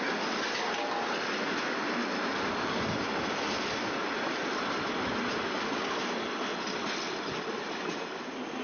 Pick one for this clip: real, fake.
real